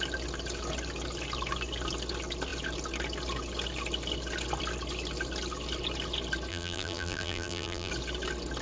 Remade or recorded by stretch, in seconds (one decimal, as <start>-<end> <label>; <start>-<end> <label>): 0.0-6.5 recorded; 6.5-7.9 remade; 7.9-8.6 recorded

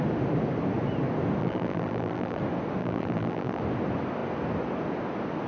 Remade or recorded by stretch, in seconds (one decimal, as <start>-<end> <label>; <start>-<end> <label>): 0.0-1.4 recorded; 1.4-2.4 remade; 2.4-2.8 recorded; 2.8-3.6 remade; 3.6-5.5 recorded

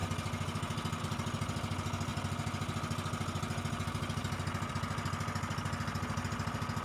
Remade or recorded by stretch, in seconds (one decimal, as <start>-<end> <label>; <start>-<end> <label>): 0.0-6.8 recorded

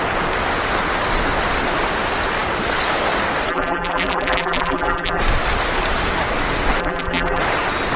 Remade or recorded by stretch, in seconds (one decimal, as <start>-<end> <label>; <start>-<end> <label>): 0.0-3.5 recorded; 3.5-5.2 remade; 5.2-6.8 recorded; 6.8-7.4 remade; 7.4-8.0 recorded

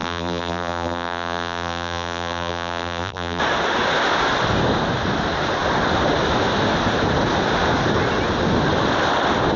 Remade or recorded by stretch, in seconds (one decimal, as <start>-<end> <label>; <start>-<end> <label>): 0.0-3.4 remade; 3.4-9.6 recorded